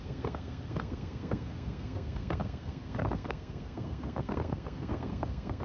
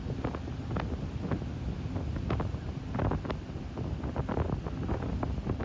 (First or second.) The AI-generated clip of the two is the first